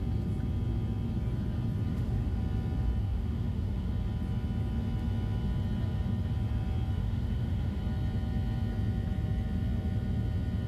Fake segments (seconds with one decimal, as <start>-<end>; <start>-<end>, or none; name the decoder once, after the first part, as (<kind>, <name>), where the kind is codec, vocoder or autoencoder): 1.9-2.4 (autoencoder, DAC-VAE); 3.0-3.9; 7.0-7.8